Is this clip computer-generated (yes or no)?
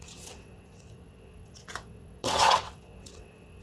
yes